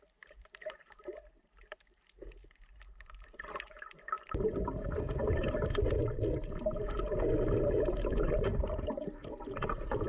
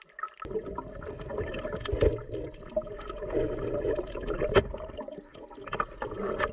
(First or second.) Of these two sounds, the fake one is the first